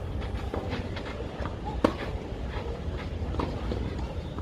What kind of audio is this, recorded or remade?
recorded